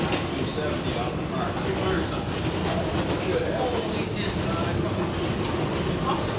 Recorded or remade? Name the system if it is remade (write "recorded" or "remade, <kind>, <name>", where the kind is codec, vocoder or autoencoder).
recorded